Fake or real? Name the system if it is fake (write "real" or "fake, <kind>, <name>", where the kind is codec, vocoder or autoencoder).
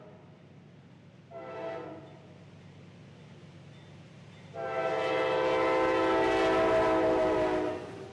real